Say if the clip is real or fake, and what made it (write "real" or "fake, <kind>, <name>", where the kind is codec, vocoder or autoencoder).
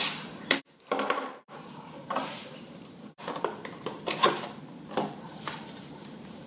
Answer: fake, vocoder, BigVGAN v2